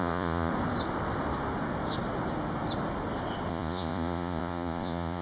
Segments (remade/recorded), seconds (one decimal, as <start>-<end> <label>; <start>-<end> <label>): 0.0-0.5 remade; 0.5-3.5 recorded; 3.5-5.2 remade